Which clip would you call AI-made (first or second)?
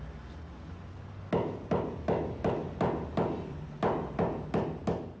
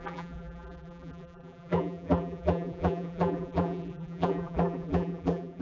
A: second